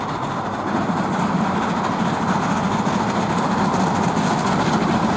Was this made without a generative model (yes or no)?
yes